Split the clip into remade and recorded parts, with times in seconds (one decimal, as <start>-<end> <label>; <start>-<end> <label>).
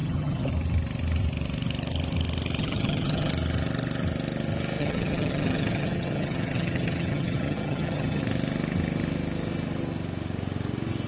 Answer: 0.0-0.5 remade; 0.5-2.6 recorded; 2.6-3.3 remade; 3.3-4.8 recorded; 4.8-8.2 remade; 8.2-11.1 recorded